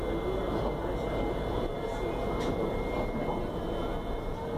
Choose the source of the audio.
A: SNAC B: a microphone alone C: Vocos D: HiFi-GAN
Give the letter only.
B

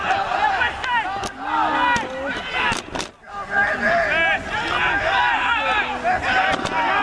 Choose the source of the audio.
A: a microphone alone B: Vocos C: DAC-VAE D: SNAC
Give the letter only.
A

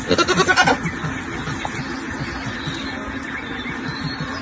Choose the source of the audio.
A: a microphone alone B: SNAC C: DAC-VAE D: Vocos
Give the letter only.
A